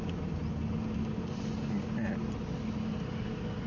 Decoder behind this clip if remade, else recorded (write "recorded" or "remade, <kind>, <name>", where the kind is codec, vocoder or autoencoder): recorded